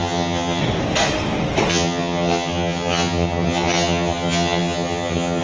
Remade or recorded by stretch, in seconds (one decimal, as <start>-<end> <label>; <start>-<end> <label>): 0.0-0.6 remade; 0.6-1.7 recorded; 1.7-5.4 remade